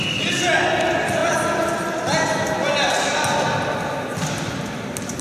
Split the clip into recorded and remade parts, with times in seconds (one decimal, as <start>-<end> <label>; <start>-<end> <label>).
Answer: 0.0-5.2 recorded